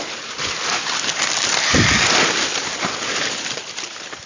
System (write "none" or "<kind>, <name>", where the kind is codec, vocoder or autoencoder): none